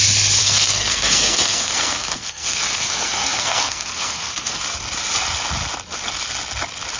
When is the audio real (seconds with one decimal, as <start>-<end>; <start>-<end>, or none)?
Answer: 0.0-0.4; 4.6-7.0